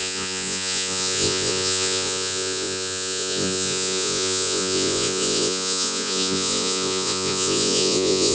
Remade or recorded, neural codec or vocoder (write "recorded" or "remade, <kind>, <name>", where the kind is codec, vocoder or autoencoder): remade, vocoder, Vocos